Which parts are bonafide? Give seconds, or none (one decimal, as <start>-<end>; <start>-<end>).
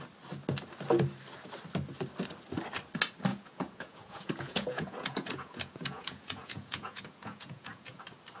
0.0-3.3; 8.0-8.4